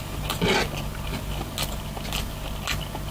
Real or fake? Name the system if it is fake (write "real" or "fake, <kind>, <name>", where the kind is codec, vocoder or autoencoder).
real